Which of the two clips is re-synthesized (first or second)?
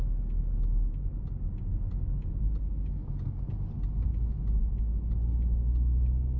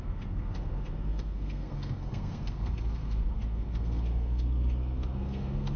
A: second